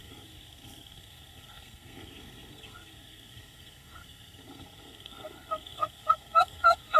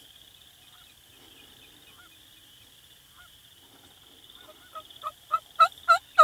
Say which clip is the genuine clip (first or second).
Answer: second